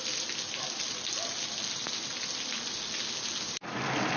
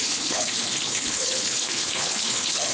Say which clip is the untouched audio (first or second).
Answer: first